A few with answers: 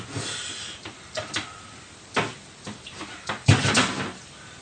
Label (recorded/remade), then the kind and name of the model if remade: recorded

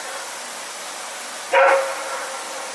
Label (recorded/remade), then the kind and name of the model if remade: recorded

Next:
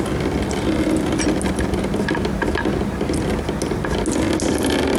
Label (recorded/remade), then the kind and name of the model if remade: recorded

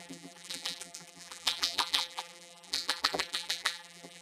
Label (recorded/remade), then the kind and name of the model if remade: remade, vocoder, BigVGAN v2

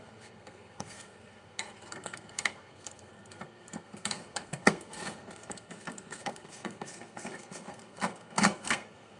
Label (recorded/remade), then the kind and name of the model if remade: remade, codec, SNAC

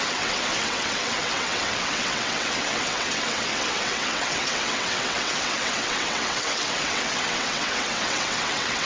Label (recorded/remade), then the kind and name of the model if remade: remade, vocoder, WaveNeXt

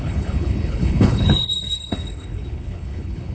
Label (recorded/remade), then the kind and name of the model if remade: remade, codec, HILCodec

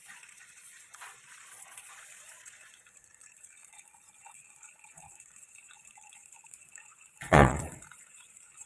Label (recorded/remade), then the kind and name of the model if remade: remade, vocoder, Vocos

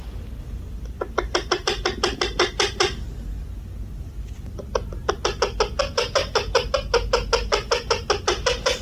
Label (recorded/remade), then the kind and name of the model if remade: recorded